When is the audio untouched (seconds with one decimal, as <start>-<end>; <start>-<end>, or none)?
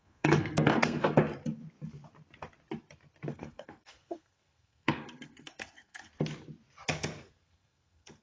1.2-3.3; 6.1-7.2